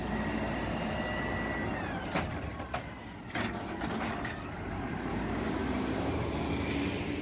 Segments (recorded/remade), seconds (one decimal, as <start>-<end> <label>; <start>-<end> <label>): 0.0-5.1 recorded; 5.1-6.2 remade; 6.2-7.2 recorded